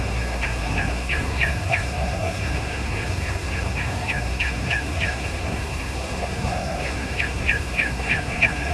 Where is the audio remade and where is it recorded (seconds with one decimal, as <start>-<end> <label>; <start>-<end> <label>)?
0.0-8.7 remade